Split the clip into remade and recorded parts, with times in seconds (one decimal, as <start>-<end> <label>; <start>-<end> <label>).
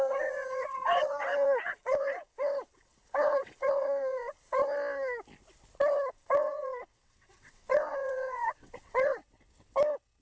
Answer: 0.0-4.6 remade; 4.6-6.1 recorded; 6.1-9.2 remade; 9.2-10.2 recorded